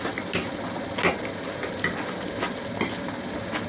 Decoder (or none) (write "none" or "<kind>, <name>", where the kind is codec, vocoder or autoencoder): none